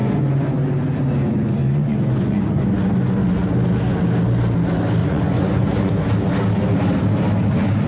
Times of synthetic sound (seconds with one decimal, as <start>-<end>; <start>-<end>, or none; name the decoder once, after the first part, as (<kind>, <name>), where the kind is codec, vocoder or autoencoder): 0.0-0.5 (vocoder, Vocos); 1.6-2.6; 5.0-5.9